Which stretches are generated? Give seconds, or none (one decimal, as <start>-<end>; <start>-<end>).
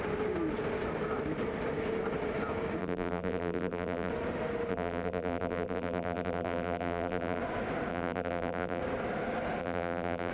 2.8-4.1; 4.7-7.4; 7.9-8.8; 9.6-10.3